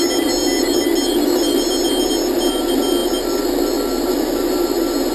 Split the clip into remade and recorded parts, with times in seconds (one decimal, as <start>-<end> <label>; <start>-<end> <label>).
0.0-5.1 recorded